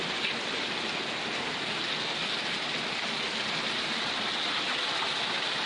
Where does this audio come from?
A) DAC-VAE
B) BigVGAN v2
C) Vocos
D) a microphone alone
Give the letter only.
D